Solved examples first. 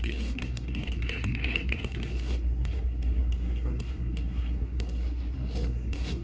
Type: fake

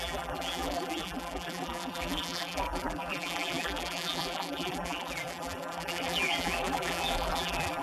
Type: fake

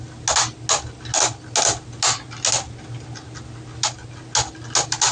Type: real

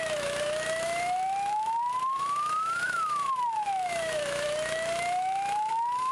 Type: fake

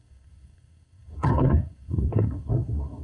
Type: fake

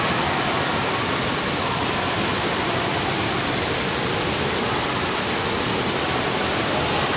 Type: real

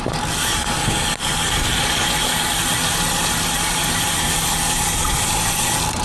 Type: real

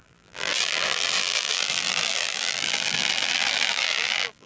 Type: fake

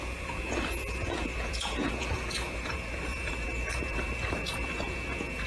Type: fake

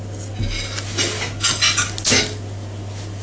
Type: real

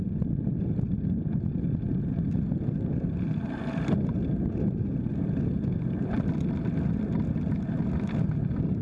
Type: real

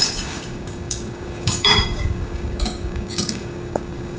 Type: fake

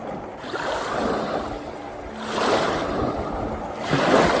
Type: real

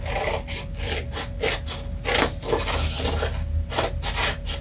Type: real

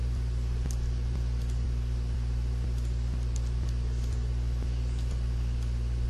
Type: real